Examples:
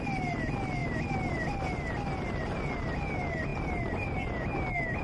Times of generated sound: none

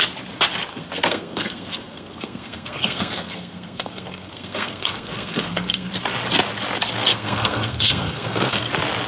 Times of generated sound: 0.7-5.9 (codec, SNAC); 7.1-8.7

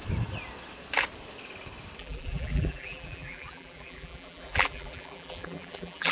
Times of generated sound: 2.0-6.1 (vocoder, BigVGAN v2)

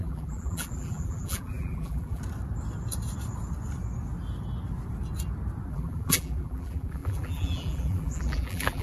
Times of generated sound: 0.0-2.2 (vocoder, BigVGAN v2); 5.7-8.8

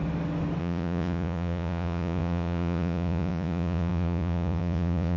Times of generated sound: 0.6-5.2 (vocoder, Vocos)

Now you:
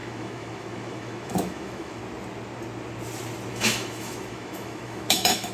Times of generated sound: 0.0-2.0 (autoencoder, DAC-VAE); 3.5-5.5

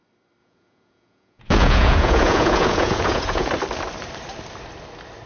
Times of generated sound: 0.4-3.5 (vocoder, Vocos)

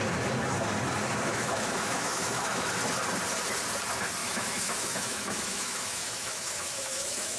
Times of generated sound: 1.3-2.7 (autoencoder, DAC-VAE); 4.2-7.4